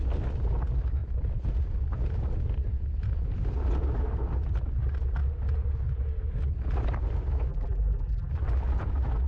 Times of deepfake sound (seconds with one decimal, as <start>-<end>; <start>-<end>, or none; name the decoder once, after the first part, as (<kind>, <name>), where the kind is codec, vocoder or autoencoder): 7.5-8.3 (vocoder, BigVGAN v2)